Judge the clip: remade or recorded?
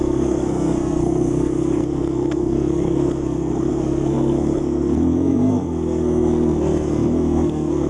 remade